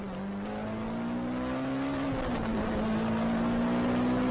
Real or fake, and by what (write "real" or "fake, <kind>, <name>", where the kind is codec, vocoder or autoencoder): real